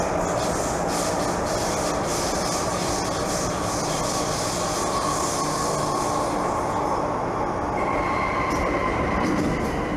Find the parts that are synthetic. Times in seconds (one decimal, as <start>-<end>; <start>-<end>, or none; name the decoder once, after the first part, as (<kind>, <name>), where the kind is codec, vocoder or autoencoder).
8.8-9.3 (vocoder, BigVGAN v2)